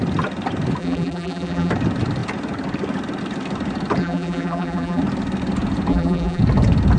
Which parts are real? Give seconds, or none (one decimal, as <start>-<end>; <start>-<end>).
0.0-0.8; 1.7-4.0; 5.0-5.9; 6.4-7.0